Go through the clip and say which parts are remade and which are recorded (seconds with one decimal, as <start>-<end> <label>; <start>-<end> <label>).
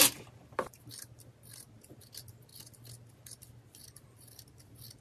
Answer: 0.0-0.4 recorded; 0.4-0.9 remade; 0.9-5.0 recorded